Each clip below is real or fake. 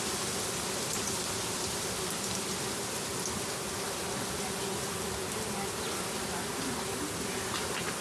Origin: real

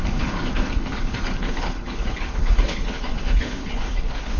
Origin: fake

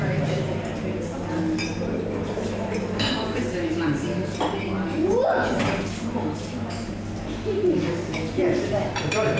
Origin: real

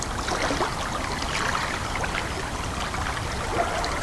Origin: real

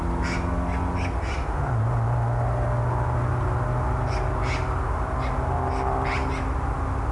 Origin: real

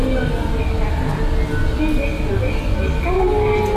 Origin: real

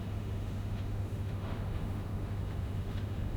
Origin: fake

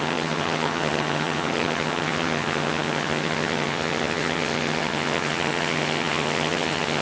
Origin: fake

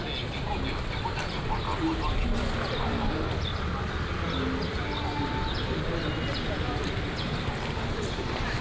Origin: real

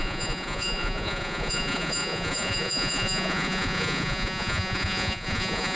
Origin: fake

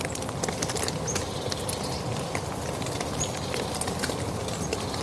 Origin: real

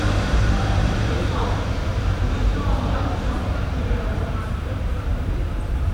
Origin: fake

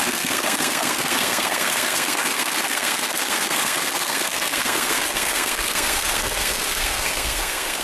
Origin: fake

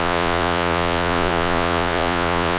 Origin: fake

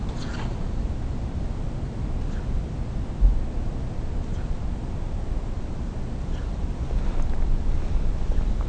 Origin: real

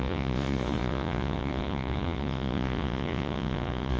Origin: fake